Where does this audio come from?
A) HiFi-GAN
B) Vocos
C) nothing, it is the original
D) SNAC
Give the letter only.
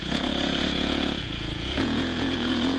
B